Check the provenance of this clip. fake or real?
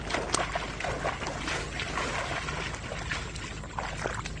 real